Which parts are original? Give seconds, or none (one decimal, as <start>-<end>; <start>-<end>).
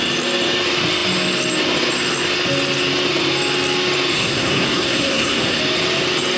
0.0-4.1; 5.6-6.4